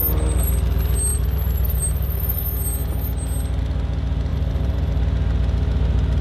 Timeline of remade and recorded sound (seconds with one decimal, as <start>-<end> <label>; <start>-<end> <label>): 0.0-1.1 recorded; 1.1-2.4 remade; 2.4-4.3 recorded; 4.3-5.0 remade; 5.0-6.2 recorded